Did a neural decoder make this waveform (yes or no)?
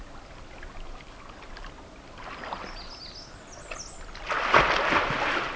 no